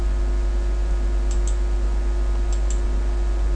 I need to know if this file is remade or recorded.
recorded